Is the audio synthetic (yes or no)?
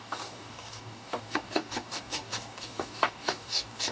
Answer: yes